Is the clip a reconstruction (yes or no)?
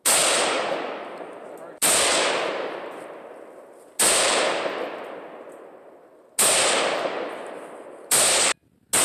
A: no